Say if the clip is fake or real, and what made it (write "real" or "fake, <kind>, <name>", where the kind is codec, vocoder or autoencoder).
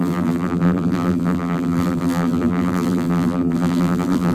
fake, vocoder, BigVGAN v2